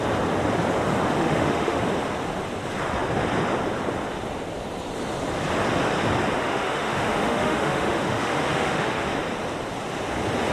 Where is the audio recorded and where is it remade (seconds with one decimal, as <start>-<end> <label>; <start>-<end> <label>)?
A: 0.0-1.2 recorded; 1.2-1.8 remade; 1.8-6.4 recorded; 6.4-9.1 remade; 9.1-10.5 recorded